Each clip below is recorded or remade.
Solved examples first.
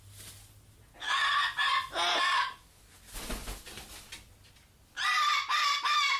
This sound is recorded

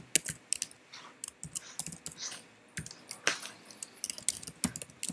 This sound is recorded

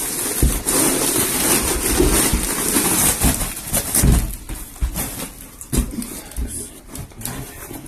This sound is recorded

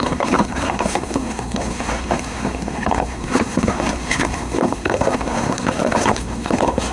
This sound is remade